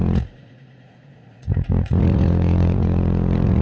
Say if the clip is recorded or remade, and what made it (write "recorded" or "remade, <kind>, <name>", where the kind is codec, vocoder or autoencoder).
remade, vocoder, Vocos